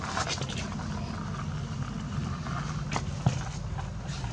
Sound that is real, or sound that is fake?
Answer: real